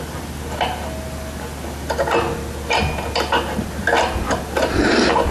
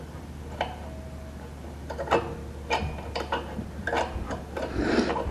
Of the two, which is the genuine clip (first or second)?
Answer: first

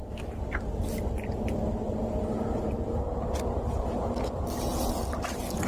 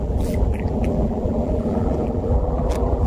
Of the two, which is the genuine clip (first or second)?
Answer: first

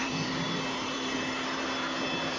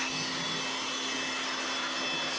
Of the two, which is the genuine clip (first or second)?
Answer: second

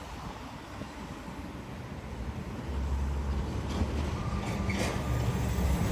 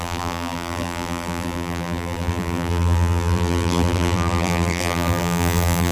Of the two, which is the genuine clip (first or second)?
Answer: first